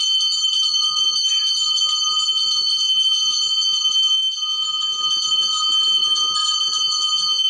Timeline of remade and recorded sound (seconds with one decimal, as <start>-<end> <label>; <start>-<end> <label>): 0.0-0.4 recorded; 0.4-1.2 remade; 1.2-6.0 recorded; 6.0-6.6 remade; 6.6-7.5 recorded